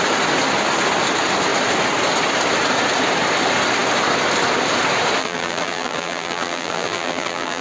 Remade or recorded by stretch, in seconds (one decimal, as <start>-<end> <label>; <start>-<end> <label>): 0.0-5.2 recorded; 5.2-7.6 remade